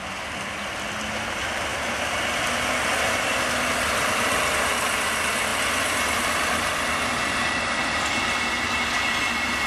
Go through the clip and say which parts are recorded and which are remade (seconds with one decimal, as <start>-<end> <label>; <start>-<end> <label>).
0.0-9.7 recorded